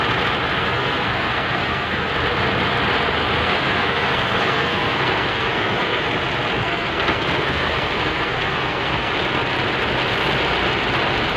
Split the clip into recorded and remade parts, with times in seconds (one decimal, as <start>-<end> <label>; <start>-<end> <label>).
0.0-0.6 recorded; 0.6-2.1 remade; 2.1-3.4 recorded; 3.4-6.0 remade; 6.0-6.6 recorded; 6.6-9.1 remade; 9.1-11.4 recorded